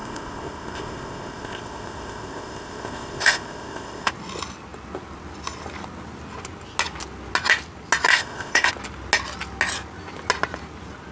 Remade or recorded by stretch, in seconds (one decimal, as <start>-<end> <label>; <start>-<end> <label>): 0.0-4.1 remade; 4.1-8.1 recorded; 8.1-8.7 remade; 8.7-11.1 recorded